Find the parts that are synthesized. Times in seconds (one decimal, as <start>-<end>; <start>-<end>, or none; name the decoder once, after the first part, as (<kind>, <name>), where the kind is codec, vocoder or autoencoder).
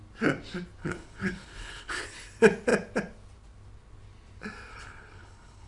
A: 0.8-2.0 (codec, HILCodec); 4.7-5.7